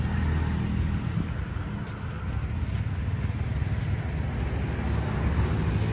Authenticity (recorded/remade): recorded